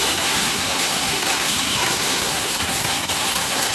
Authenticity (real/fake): fake